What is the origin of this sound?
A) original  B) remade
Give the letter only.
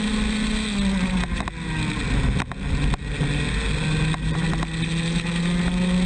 A